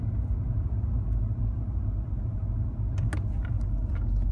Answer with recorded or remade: recorded